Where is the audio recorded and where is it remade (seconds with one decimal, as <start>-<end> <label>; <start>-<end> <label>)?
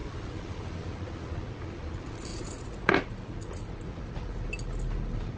0.0-2.3 recorded; 2.3-2.9 remade; 2.9-5.4 recorded